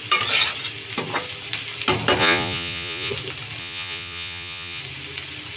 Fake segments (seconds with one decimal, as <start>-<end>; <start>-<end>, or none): 2.2-3.1; 3.6-4.8

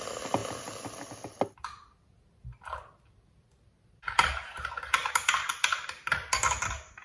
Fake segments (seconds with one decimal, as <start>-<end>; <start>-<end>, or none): none

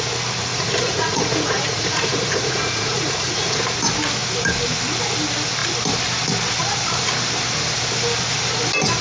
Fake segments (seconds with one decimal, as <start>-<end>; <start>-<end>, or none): 0.5-3.6

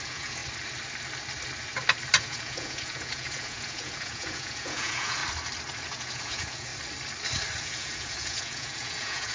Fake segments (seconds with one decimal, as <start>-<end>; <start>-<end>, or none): 0.0-0.4; 2.2-5.2; 5.8-6.7; 7.6-9.3

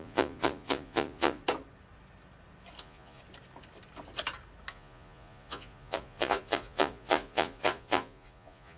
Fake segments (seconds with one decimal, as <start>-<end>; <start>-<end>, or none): 0.0-1.4; 2.8-3.2; 4.7-8.8

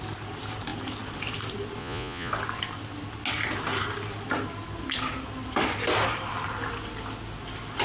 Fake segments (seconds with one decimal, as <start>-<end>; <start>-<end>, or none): 1.8-2.3

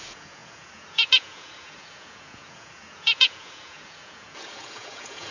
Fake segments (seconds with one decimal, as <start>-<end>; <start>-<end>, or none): 0.0-5.3

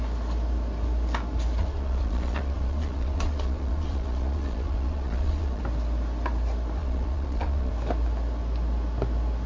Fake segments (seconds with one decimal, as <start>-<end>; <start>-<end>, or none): 1.6-5.6; 6.8-7.7